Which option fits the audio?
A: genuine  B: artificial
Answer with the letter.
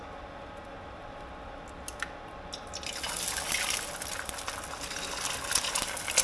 A